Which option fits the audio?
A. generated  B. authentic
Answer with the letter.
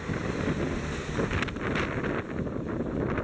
B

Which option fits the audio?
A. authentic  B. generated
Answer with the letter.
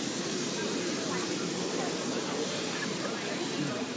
B